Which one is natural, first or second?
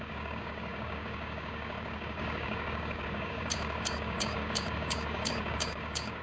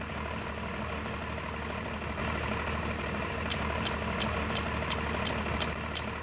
second